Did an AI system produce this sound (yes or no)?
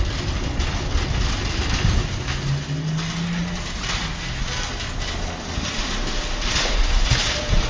no